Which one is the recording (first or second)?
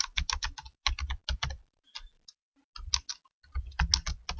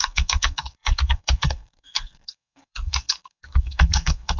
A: first